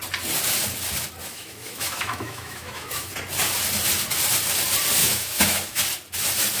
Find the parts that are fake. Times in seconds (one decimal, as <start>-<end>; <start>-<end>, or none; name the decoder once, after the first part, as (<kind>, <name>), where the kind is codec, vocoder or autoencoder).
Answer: 1.2-3.1 (autoencoder, DAC-VAE); 5.0-5.8